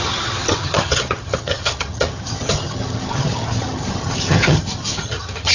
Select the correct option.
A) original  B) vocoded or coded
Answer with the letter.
B